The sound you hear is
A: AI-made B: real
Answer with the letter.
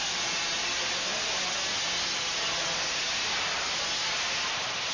B